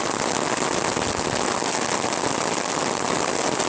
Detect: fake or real real